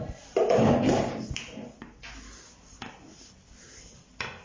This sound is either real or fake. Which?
real